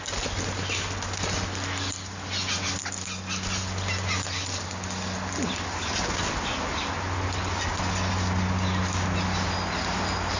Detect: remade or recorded recorded